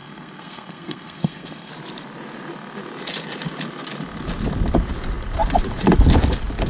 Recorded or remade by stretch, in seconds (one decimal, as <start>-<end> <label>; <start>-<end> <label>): 0.0-1.7 remade; 1.7-6.7 recorded